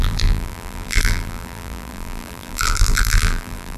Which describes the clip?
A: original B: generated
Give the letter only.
B